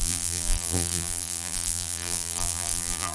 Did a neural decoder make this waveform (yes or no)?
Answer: yes